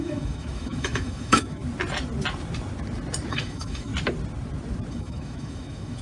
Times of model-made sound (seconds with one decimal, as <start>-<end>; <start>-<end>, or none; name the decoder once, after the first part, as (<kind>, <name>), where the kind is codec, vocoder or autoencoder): 0.0-1.6 (autoencoder, DAC-VAE); 3.3-3.9; 4.9-6.0